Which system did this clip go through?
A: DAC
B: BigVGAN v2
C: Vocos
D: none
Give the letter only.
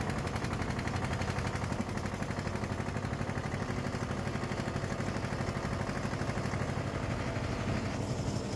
D